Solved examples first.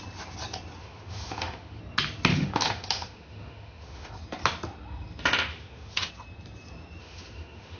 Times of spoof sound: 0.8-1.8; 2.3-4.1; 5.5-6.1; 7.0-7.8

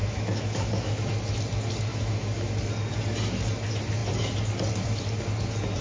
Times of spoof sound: 0.0-1.1; 1.9-2.5